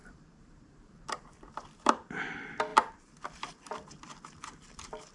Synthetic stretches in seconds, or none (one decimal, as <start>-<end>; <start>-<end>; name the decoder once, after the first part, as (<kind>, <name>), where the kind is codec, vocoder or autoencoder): 0.0-2.2 (vocoder, BigVGAN v2); 2.7-3.9